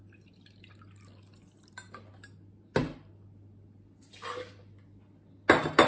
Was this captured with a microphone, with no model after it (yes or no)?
yes